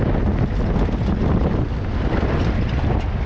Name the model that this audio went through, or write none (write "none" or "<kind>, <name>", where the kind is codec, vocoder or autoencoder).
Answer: none